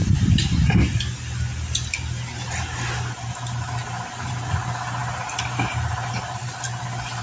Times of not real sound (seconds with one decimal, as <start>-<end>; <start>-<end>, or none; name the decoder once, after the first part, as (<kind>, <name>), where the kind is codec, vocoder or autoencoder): none